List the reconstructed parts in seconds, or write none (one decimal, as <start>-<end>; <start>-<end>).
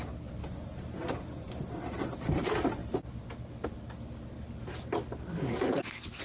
0.4-1.5